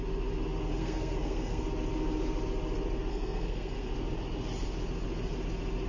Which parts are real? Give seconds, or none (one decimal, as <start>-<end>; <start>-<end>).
0.0-0.7; 1.6-3.1; 3.9-5.9